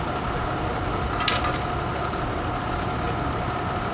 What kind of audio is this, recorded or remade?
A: recorded